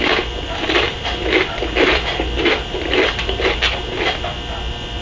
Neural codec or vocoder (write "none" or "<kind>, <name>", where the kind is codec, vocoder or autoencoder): none